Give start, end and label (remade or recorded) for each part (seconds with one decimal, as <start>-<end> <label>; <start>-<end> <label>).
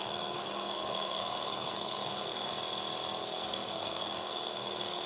0.0-2.5 remade; 2.5-3.2 recorded; 3.2-5.1 remade